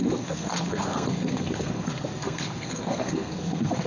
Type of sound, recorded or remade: remade